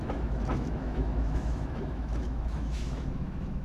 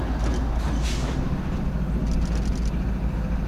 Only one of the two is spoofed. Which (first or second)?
first